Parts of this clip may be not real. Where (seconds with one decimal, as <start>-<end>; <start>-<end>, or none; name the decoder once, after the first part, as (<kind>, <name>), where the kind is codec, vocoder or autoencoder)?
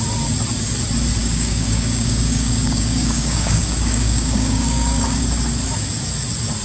1.2-5.2 (codec, DAC)